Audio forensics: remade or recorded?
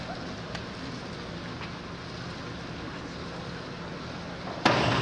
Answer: recorded